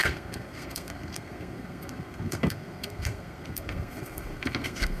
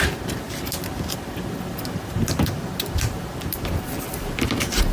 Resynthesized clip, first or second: first